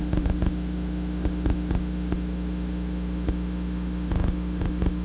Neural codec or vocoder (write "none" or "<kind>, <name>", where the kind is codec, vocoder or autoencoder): autoencoder, DAC-VAE